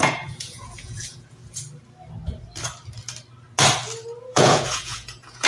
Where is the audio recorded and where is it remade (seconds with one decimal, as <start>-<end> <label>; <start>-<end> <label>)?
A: 0.0-1.4 remade; 1.4-4.2 recorded; 4.2-5.5 remade